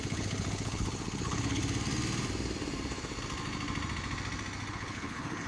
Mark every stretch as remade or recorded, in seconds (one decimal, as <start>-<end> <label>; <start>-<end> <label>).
0.0-1.6 remade; 1.6-4.7 recorded; 4.7-5.5 remade